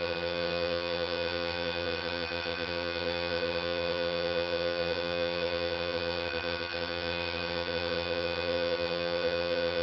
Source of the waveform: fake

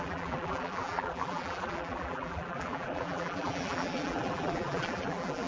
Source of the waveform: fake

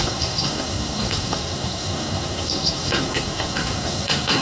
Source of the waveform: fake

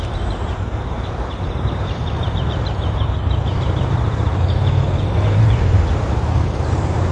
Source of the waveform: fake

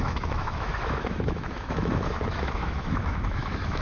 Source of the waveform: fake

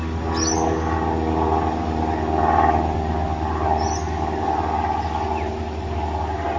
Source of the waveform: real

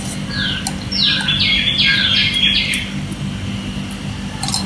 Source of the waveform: real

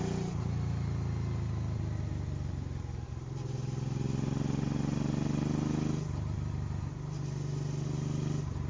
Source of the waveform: real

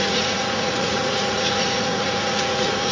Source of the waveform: fake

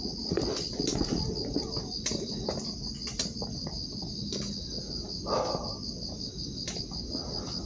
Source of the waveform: real